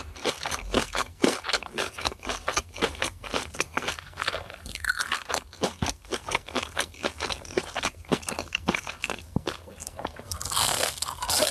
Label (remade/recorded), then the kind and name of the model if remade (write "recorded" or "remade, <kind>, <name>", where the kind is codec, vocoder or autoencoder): remade, codec, SNAC